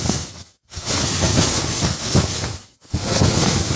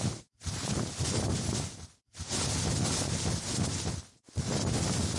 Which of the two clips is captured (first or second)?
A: second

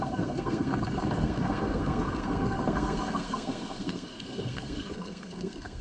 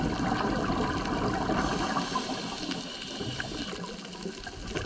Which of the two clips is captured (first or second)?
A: second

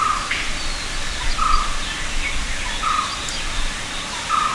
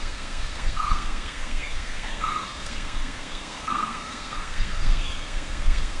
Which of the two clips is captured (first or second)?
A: first